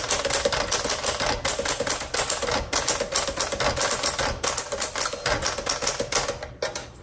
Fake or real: real